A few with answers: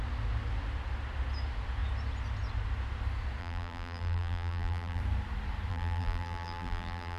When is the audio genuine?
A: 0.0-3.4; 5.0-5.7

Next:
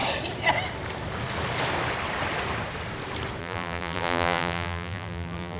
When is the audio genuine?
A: 0.0-3.4

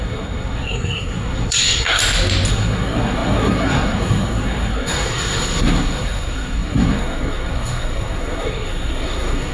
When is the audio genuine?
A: 2.0-2.5